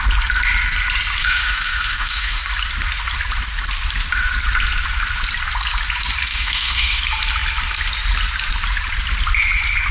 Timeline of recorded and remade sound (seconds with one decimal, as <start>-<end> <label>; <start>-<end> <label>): 0.0-1.2 recorded; 1.2-2.4 remade; 2.4-6.3 recorded; 6.3-7.0 remade; 7.0-9.9 recorded

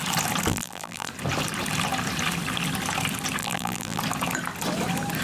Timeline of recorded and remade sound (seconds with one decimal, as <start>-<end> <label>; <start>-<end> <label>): 0.0-0.5 recorded; 0.5-1.1 remade; 1.1-3.4 recorded; 3.4-4.0 remade; 4.0-5.2 recorded

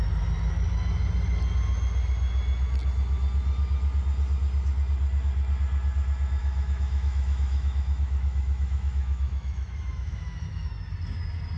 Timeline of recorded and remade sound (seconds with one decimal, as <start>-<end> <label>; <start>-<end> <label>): 0.0-6.4 recorded; 6.4-10.7 remade; 10.7-11.6 recorded

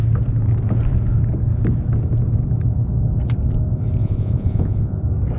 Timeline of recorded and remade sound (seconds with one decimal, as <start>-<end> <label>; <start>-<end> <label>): 0.0-4.0 recorded; 4.0-5.0 remade; 5.0-5.4 recorded

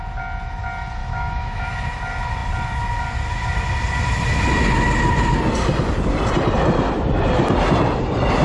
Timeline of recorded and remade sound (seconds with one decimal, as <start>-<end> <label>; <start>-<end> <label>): 0.0-1.0 recorded; 1.0-1.7 remade; 1.7-8.4 recorded

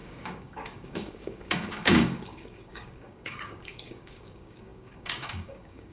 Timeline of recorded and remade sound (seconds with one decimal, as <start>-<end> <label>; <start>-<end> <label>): 0.0-5.9 remade